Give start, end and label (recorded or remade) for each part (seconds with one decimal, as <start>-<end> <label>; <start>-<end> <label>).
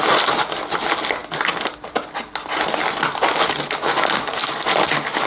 0.0-5.3 recorded